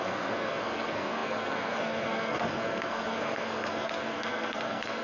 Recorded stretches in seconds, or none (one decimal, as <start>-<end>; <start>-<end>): none